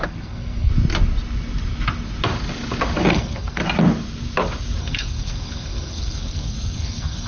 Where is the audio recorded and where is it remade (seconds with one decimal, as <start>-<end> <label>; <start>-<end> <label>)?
0.0-0.7 remade; 0.7-3.1 recorded; 3.1-3.6 remade; 3.6-4.8 recorded; 4.8-7.3 remade